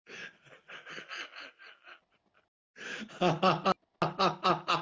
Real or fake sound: real